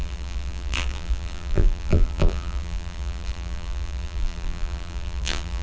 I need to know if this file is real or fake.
fake